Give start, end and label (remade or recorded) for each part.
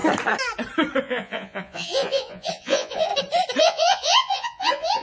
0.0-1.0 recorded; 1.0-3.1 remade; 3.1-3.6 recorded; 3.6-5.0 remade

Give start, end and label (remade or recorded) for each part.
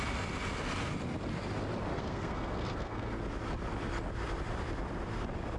0.0-1.9 recorded; 1.9-3.2 remade; 3.2-5.6 recorded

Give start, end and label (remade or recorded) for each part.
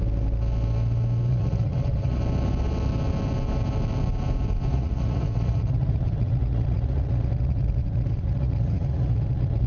0.0-1.3 recorded; 1.3-2.2 remade; 2.2-4.7 recorded; 4.7-9.7 remade